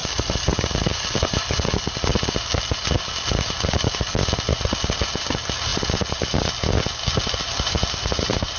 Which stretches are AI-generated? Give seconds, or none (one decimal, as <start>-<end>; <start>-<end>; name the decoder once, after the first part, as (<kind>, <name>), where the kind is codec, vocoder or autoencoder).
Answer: 0.0-1.9 (vocoder, BigVGAN v2)